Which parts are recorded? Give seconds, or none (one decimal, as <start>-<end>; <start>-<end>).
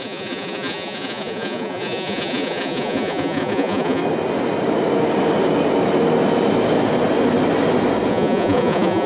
4.0-8.1